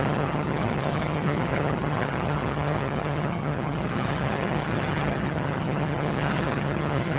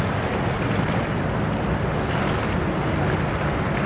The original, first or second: second